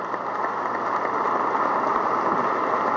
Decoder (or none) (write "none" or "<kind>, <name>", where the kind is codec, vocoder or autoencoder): none